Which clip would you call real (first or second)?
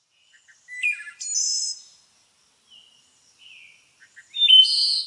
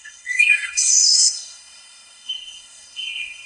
first